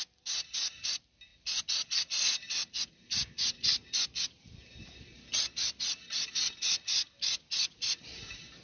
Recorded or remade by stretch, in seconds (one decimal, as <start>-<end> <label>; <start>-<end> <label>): 0.0-8.6 recorded